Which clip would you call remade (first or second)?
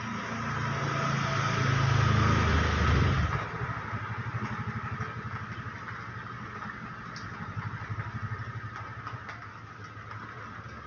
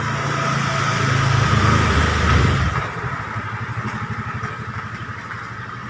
second